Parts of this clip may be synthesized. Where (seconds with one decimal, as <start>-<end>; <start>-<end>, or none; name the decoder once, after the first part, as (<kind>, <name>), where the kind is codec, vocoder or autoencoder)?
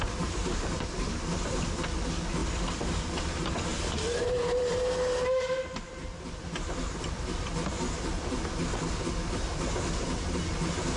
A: none